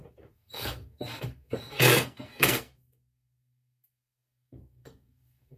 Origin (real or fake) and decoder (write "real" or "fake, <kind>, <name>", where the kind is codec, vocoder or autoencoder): fake, codec, SNAC